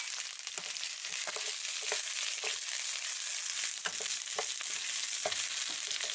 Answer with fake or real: real